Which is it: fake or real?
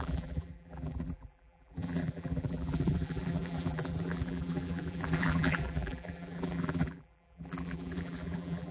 fake